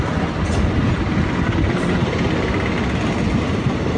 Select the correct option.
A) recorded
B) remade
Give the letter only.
A